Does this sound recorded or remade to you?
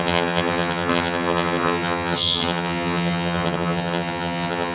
remade